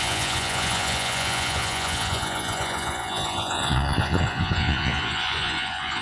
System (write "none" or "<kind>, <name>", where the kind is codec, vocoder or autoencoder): vocoder, Vocos